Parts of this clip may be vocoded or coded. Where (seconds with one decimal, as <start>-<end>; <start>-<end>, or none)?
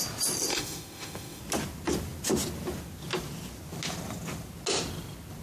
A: 0.5-1.4